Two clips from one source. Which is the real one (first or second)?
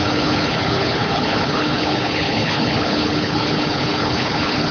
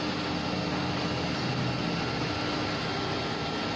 second